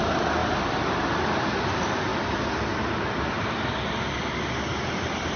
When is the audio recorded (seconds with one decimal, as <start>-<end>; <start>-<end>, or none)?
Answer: 0.0-5.4